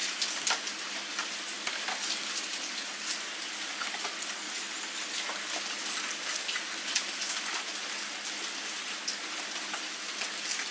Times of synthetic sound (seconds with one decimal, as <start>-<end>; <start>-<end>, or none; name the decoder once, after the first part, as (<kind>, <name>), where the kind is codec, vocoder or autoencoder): none